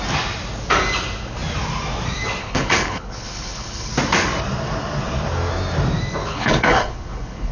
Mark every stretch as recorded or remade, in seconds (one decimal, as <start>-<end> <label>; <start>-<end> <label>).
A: 0.0-2.4 recorded; 2.4-3.9 remade; 3.9-6.2 recorded; 6.2-7.5 remade